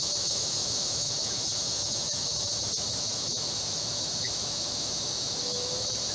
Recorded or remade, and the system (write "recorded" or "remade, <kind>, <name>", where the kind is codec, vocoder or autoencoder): remade, autoencoder, DAC-VAE